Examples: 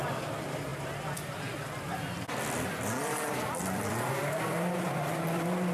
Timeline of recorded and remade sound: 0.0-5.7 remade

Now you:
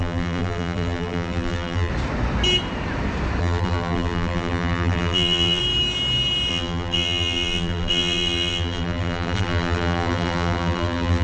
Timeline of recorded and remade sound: 0.0-1.9 remade; 1.9-3.4 recorded; 3.4-5.6 remade; 5.6-6.5 recorded; 6.5-11.2 remade

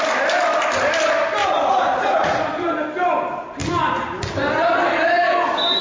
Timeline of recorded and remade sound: 0.0-1.4 recorded; 1.4-2.7 remade; 2.7-5.8 recorded

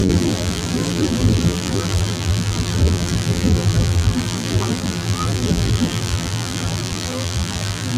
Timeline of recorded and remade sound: 0.0-8.0 remade